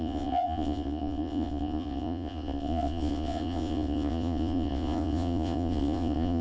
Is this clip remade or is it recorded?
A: remade